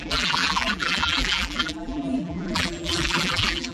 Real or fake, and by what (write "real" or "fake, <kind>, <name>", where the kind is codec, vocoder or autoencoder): fake, vocoder, BigVGAN v2